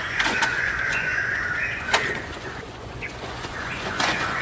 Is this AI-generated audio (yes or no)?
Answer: yes